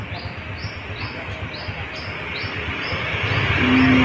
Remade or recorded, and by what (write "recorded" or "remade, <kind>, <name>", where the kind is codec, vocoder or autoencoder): recorded